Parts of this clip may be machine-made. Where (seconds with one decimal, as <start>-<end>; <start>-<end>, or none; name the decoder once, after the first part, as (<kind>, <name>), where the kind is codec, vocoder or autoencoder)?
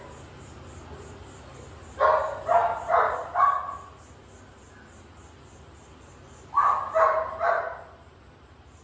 none